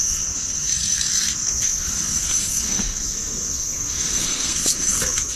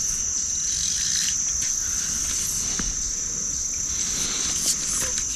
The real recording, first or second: second